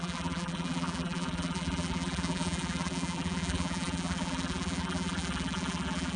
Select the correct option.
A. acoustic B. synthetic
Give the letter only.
B